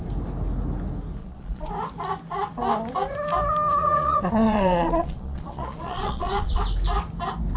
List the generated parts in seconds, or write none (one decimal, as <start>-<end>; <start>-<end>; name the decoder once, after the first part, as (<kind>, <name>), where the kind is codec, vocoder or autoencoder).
1.2-1.7 (vocoder, Vocos); 3.8-6.6